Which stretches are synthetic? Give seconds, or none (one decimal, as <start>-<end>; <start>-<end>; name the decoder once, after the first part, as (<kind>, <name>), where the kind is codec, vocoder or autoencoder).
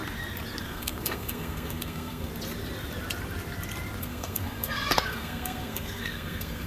0.6-2.3 (codec, SNAC); 4.0-6.7